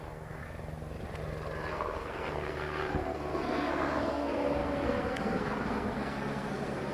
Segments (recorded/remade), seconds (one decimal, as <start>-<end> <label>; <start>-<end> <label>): 0.0-0.4 remade; 0.4-1.7 recorded; 1.7-6.9 remade